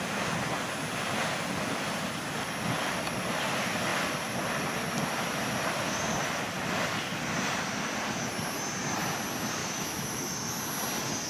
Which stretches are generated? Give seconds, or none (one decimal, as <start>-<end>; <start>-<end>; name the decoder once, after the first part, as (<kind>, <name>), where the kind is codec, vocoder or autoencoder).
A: 9.6-10.5 (autoencoder, DAC-VAE)